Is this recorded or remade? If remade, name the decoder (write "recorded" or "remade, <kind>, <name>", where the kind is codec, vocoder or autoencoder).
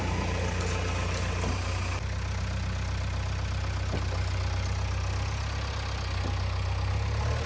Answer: recorded